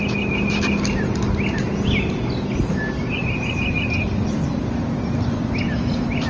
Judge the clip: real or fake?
real